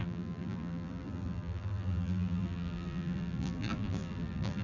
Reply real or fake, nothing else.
fake